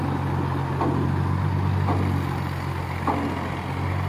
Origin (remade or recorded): recorded